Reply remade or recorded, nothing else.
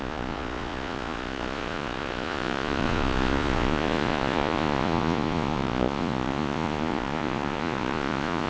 remade